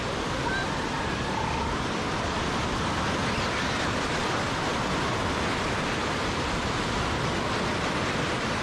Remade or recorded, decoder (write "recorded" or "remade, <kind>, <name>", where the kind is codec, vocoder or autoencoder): recorded